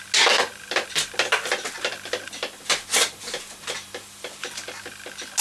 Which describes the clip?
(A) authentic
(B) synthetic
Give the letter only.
A